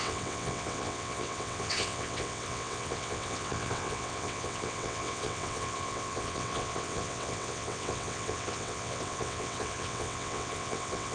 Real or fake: fake